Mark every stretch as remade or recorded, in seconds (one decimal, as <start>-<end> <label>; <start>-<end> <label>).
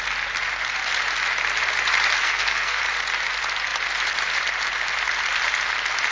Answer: 0.0-2.2 recorded; 2.2-2.8 remade; 2.8-6.1 recorded